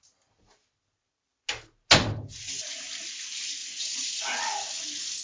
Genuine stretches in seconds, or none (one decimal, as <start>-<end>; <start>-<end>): 0.0-3.6; 4.2-5.2